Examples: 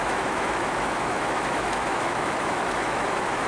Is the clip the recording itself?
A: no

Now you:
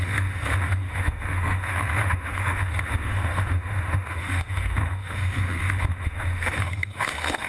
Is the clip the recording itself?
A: no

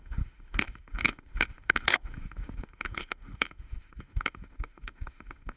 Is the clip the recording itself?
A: no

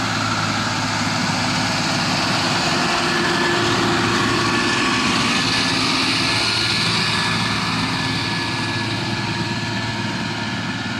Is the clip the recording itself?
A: yes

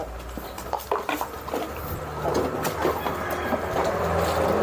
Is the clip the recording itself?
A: yes